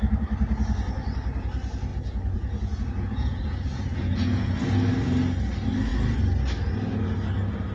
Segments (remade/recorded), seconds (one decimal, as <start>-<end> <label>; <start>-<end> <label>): 0.0-1.9 recorded; 1.9-4.6 remade; 4.6-7.7 recorded